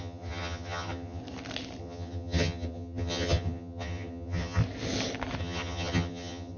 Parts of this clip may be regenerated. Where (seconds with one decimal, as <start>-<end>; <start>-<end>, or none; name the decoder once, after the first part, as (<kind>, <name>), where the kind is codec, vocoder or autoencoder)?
0.0-1.2 (vocoder, HiFi-GAN); 1.8-4.6; 5.4-6.6